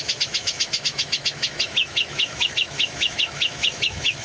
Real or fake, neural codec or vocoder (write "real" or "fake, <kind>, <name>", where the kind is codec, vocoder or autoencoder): fake, autoencoder, DAC-VAE